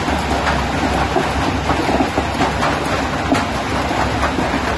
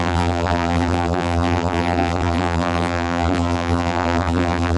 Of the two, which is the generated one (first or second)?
second